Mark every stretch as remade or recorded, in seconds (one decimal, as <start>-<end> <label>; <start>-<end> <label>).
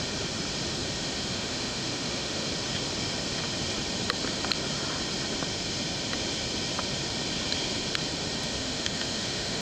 0.0-1.3 recorded; 1.3-2.5 remade; 2.5-8.6 recorded; 8.6-9.6 remade